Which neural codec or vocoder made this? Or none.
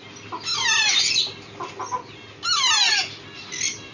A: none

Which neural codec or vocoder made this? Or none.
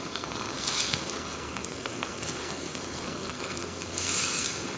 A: codec, SNAC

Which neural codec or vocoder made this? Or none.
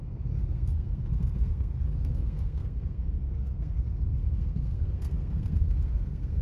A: codec, SNAC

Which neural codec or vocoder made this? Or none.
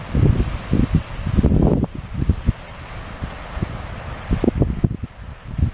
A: none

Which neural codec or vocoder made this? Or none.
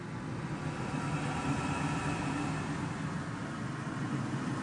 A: none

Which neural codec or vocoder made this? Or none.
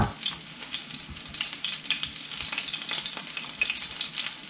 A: none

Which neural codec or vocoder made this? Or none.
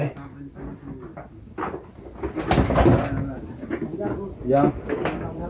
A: none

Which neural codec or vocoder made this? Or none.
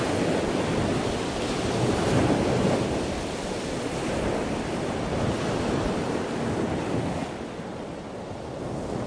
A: none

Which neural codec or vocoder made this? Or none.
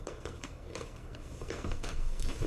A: codec, SNAC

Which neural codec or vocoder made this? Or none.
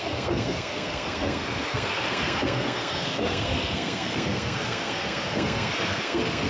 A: codec, SNAC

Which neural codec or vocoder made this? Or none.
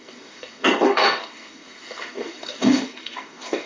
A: codec, SNAC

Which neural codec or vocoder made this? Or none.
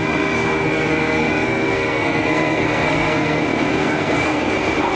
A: codec, SNAC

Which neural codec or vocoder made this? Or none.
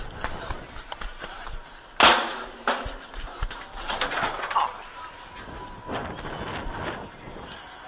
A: none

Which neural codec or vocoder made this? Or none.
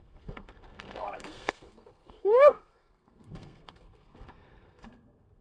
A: codec, SNAC